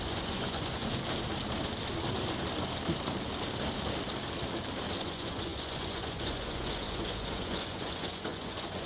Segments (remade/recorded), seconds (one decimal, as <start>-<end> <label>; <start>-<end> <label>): 0.0-0.8 remade; 0.8-5.0 recorded; 5.0-8.9 remade